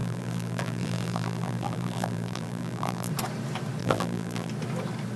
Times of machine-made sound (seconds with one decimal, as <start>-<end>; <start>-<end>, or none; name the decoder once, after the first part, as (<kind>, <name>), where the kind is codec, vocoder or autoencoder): 0.0-3.1 (vocoder, BigVGAN v2); 3.8-4.5